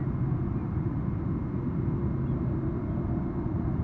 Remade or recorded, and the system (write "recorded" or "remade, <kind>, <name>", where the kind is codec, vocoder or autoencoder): recorded